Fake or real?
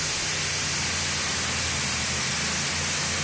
real